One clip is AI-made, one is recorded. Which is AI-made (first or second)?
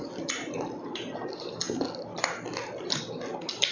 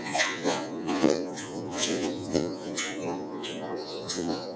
second